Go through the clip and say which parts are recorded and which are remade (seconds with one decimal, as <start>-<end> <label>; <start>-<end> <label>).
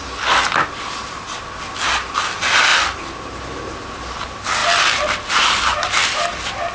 0.0-2.7 recorded; 2.7-3.4 remade; 3.4-5.7 recorded; 5.7-6.7 remade